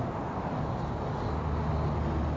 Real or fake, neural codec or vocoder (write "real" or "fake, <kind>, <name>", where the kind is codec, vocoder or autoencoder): real